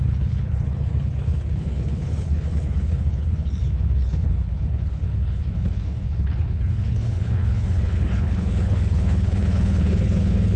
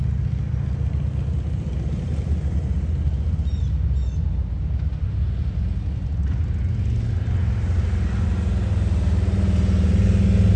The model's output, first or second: first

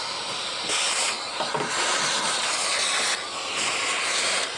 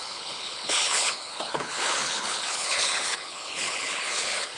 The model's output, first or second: second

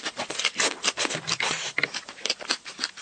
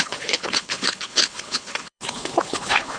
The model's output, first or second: second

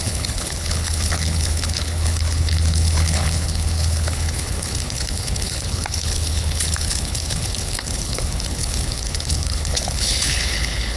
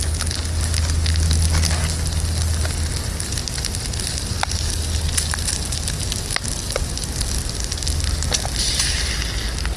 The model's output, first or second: first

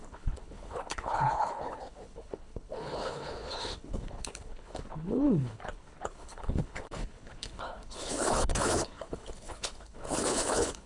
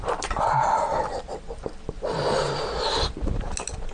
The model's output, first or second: first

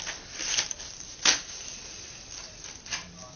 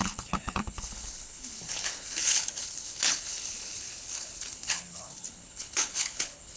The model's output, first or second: second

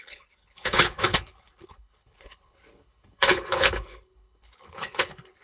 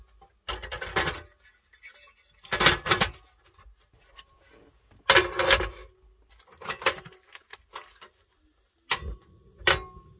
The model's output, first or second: first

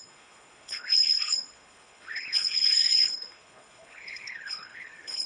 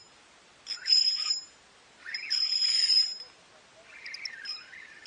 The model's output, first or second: first